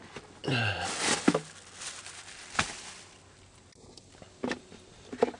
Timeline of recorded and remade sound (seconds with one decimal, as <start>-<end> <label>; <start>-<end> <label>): 0.0-5.4 recorded